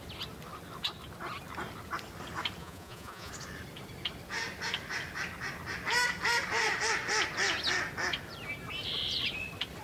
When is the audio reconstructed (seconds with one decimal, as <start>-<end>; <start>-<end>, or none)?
2.6-3.3